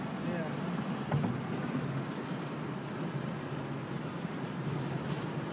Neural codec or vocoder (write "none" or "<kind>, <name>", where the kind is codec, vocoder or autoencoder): none